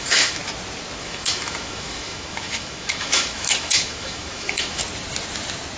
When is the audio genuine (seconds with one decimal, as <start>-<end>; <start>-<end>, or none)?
0.4-1.0; 4.8-5.8